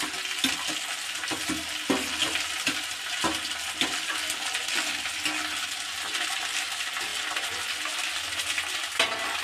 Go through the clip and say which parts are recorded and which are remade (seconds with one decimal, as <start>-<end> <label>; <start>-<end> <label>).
0.0-2.2 recorded; 2.2-5.1 remade; 5.1-9.4 recorded